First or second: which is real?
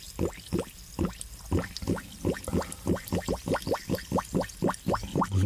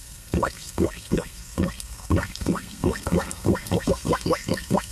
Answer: first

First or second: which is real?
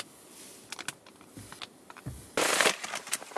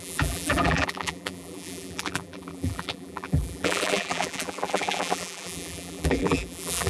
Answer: first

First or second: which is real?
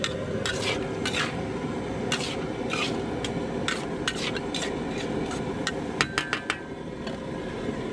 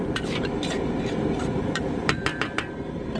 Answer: first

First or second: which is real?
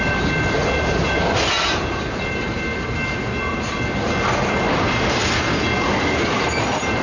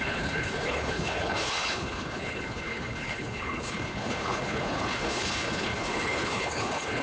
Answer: first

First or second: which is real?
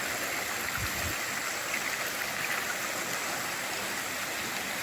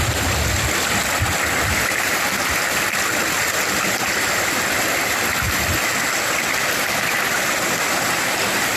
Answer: first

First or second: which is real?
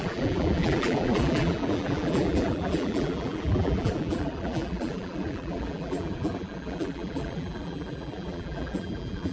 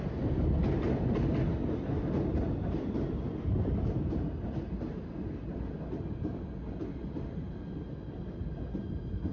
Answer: second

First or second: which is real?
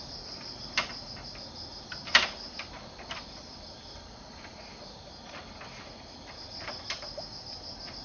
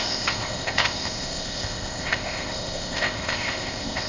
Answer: first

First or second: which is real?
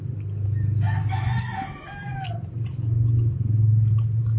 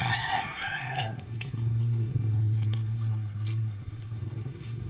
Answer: first